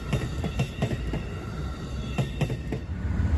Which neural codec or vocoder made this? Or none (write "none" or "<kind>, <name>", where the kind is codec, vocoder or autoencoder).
none